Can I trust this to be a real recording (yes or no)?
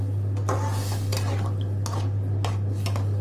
yes